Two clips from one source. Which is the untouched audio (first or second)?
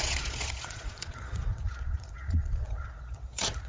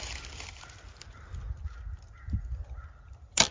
second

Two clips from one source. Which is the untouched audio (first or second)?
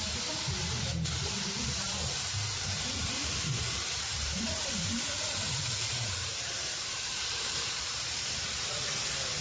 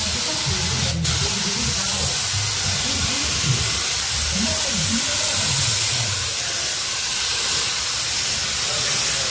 second